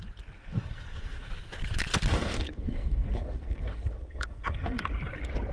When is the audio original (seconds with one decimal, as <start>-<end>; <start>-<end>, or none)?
0.0-0.4; 1.3-2.1; 4.9-5.5